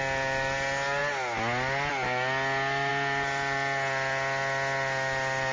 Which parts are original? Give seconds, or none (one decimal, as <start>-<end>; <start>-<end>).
0.0-5.5